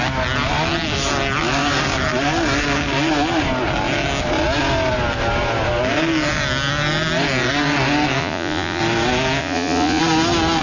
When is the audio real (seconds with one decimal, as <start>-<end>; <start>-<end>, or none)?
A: 0.0-8.2; 8.8-9.4; 10.0-10.6